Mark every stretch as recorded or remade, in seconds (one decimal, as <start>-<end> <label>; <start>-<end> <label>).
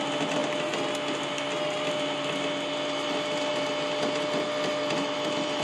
0.0-5.6 recorded